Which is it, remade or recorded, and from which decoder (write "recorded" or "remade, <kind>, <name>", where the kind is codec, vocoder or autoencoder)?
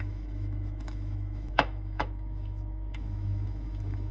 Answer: remade, autoencoder, DAC-VAE